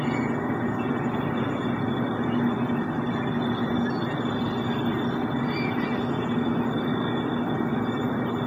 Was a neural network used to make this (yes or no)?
no